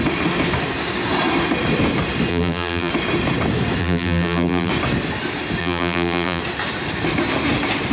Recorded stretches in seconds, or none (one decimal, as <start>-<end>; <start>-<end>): 0.0-2.3; 2.9-3.8; 4.7-5.6; 6.4-7.9